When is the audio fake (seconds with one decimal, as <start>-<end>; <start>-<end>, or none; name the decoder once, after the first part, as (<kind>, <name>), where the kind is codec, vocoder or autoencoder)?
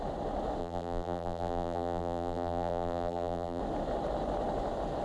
0.6-3.6 (vocoder, BigVGAN v2)